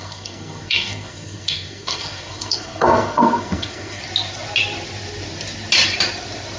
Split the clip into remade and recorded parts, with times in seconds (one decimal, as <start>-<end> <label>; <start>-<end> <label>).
0.0-4.0 remade; 4.0-6.6 recorded